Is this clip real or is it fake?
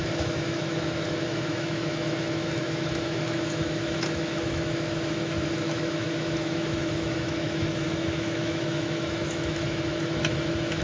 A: fake